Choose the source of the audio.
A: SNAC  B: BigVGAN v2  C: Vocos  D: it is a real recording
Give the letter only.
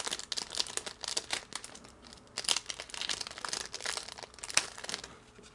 D